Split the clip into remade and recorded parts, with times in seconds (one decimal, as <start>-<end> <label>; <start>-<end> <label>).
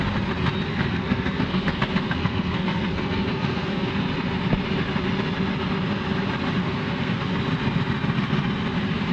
0.0-0.7 recorded; 0.7-3.9 remade; 3.9-6.6 recorded; 6.6-7.2 remade; 7.2-9.1 recorded